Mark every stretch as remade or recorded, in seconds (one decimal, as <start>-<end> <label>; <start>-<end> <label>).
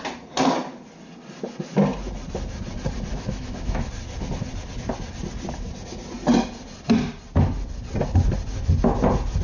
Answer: 0.0-3.1 recorded; 3.1-3.9 remade; 3.9-9.4 recorded